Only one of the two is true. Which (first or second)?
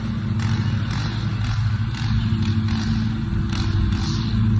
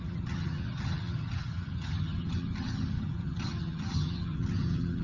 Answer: first